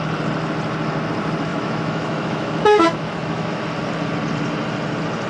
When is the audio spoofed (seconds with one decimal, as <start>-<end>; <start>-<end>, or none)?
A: 1.5-3.6